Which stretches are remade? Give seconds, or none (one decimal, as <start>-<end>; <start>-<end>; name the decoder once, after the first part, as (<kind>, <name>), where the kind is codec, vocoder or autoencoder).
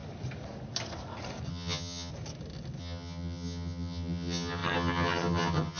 1.5-2.1 (vocoder, HiFi-GAN); 2.8-5.8